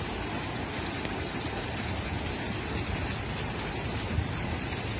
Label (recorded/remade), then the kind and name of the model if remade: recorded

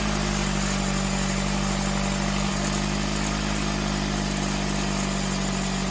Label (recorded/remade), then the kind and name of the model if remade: recorded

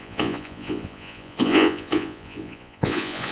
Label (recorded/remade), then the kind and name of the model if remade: remade, vocoder, Vocos